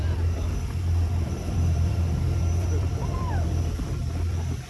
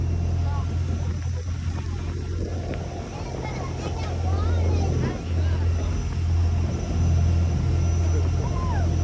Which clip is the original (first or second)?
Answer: second